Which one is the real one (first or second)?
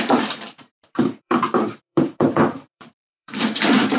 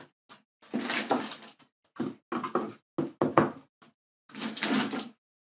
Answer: second